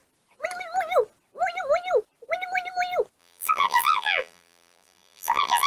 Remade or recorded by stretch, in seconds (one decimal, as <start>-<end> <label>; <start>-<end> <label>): 0.0-3.2 recorded; 3.2-5.7 remade